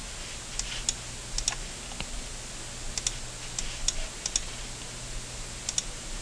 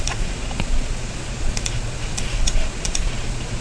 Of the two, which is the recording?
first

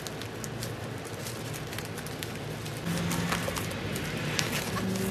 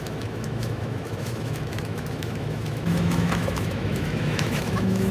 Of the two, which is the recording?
first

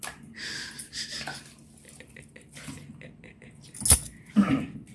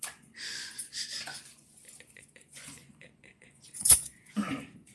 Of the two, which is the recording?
first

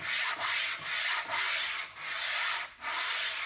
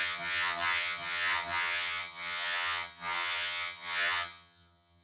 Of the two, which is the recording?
first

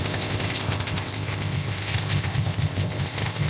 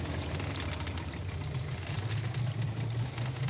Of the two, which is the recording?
second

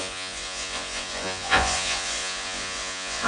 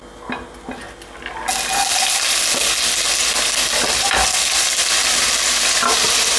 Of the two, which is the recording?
second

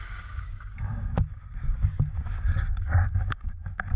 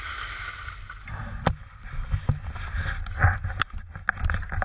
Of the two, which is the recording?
second